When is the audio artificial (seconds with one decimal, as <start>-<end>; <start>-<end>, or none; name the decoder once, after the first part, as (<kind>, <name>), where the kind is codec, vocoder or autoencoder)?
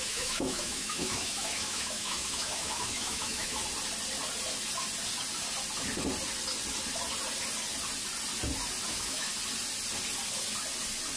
0.0-3.6 (autoencoder, DAC-VAE); 8.9-9.3